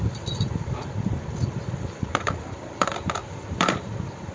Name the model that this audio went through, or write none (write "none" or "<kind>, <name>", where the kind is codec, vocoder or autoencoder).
vocoder, BigVGAN v2